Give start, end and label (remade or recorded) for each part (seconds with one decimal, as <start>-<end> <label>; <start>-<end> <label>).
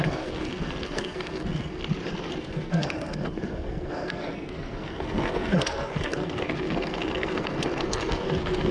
0.0-1.8 remade; 1.8-2.4 recorded; 2.4-8.7 remade